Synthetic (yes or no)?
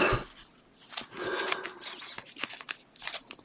no